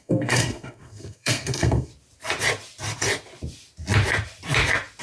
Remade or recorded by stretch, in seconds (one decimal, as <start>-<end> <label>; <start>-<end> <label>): 0.0-1.9 remade; 1.9-5.0 recorded

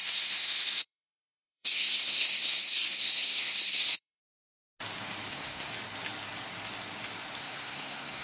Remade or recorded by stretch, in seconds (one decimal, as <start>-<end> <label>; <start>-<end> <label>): 0.0-4.2 remade; 4.2-5.3 recorded; 5.3-5.7 remade; 5.7-7.4 recorded; 7.4-8.2 remade